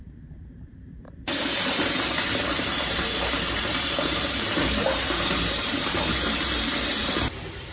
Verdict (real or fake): fake